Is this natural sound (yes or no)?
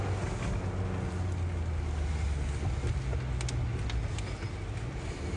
yes